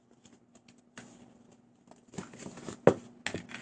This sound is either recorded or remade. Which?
recorded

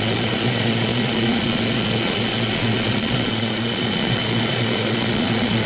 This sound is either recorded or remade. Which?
remade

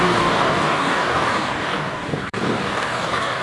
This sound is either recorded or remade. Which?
remade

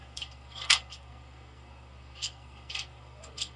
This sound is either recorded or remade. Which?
remade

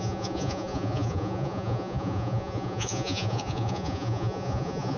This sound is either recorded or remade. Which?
remade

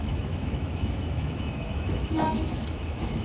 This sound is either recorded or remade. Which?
remade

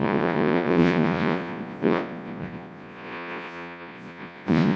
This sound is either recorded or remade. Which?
remade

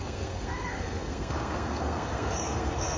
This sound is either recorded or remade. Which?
remade